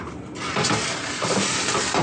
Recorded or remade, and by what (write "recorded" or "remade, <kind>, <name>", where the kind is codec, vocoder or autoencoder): recorded